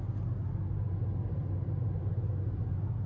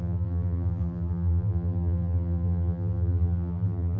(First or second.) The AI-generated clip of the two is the second